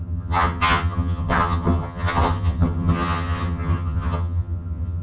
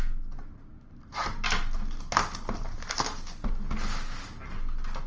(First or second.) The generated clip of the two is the first